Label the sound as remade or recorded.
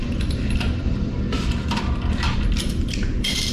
remade